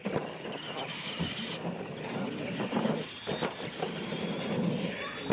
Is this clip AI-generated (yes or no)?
no